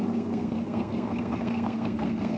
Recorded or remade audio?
remade